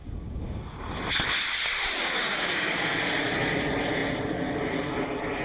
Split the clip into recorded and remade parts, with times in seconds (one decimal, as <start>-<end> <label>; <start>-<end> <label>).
0.0-0.6 remade; 0.6-2.0 recorded; 2.0-2.8 remade; 2.8-5.4 recorded